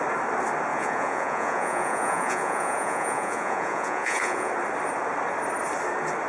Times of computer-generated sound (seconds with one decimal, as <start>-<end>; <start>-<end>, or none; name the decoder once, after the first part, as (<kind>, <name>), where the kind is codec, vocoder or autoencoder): 0.7-4.5 (vocoder, Vocos)